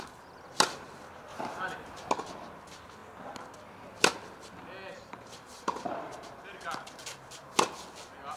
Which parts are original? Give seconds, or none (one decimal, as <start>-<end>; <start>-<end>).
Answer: 0.0-1.3; 2.1-4.9; 7.5-8.4